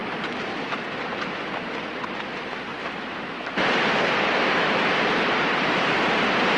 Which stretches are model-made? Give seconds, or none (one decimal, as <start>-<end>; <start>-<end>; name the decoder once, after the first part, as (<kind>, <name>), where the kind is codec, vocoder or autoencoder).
2.7-5.9 (vocoder, BigVGAN v2)